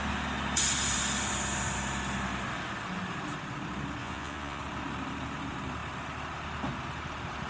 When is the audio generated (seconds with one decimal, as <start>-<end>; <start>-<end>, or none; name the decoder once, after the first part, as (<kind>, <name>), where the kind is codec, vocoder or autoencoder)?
4.0-4.6 (vocoder, Vocos)